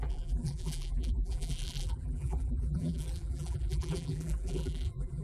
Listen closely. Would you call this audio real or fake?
fake